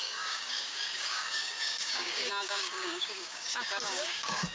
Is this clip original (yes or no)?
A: no